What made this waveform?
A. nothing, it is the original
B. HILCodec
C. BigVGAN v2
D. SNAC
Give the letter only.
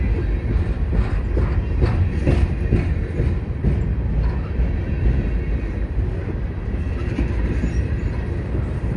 A